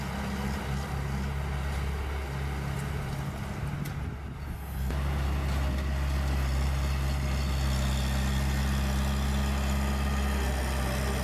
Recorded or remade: recorded